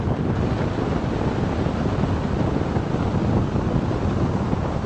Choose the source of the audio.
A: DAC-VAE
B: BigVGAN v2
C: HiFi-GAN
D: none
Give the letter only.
D